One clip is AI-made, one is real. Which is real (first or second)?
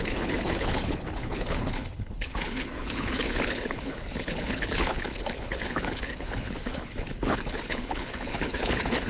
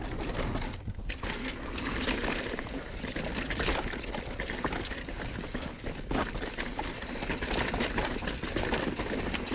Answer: second